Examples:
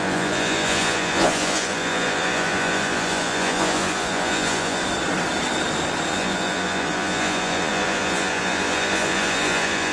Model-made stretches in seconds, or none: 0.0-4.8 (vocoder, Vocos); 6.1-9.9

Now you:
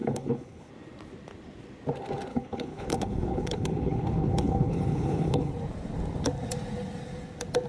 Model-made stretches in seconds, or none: 0.0-0.7 (codec, HILCodec); 2.3-5.5

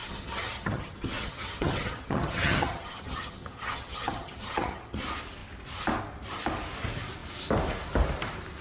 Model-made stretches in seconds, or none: 0.0-5.0 (vocoder, HiFi-GAN)

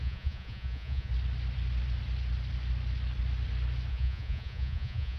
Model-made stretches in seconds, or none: 0.0-1.1 (vocoder, Vocos); 3.9-5.2

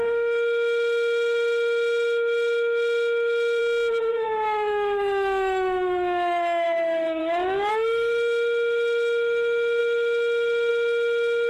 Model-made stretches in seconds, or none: 0.0-3.6 (autoencoder, DAC-VAE); 4.1-7.2; 7.7-11.5

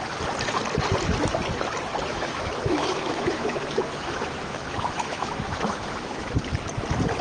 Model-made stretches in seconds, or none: 2.1-6.4 (autoencoder, DAC-VAE)

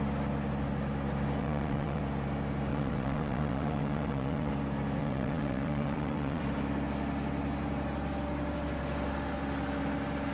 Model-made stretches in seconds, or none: 1.4-2.0 (vocoder, WaveNeXt); 2.7-4.5; 5.0-6.4

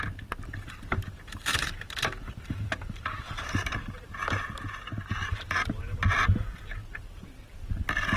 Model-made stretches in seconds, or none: 1.1-6.0 (vocoder, BigVGAN v2); 6.8-7.6